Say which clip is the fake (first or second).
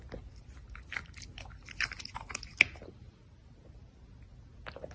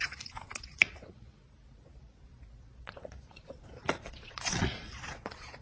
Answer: second